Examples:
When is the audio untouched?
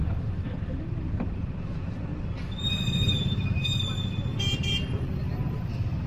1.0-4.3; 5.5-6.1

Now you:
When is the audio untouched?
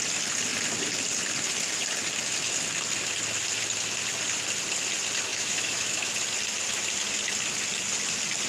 0.0-5.3; 6.1-8.5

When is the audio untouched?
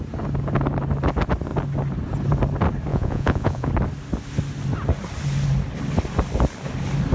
0.0-2.9; 3.7-7.1